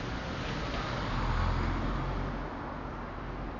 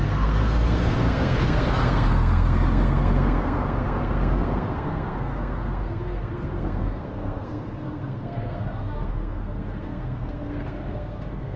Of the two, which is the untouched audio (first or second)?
first